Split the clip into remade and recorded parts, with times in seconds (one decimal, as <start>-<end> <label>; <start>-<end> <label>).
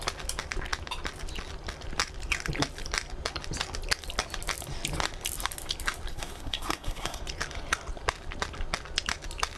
0.0-6.1 recorded; 6.1-7.2 remade; 7.2-9.6 recorded